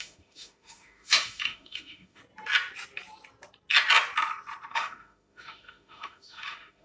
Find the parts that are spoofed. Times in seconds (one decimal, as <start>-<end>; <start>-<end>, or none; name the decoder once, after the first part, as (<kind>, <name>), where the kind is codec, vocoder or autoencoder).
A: 0.0-2.2 (autoencoder, DAC-VAE); 4.7-6.8